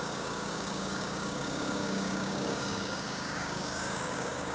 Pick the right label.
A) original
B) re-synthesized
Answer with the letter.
B